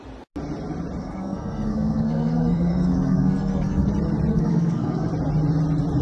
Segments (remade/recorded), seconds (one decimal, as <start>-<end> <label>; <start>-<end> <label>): 0.0-1.0 recorded; 1.0-3.9 remade; 3.9-4.3 recorded; 4.3-5.1 remade; 5.1-6.0 recorded